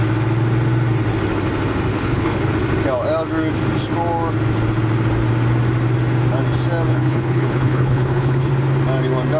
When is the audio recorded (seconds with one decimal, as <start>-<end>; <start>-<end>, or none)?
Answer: 0.0-1.9; 2.5-6.9; 8.5-9.4